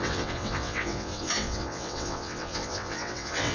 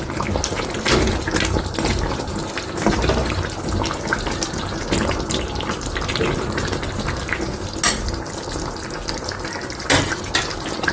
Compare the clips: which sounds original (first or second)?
second